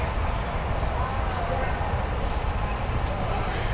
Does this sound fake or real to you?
real